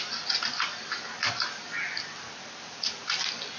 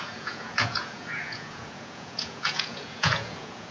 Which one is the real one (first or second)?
first